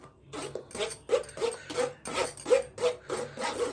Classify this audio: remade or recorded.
recorded